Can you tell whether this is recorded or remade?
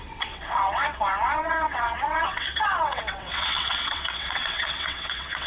remade